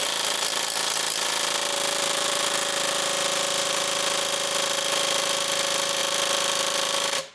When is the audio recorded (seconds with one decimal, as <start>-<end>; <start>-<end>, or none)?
0.0-6.0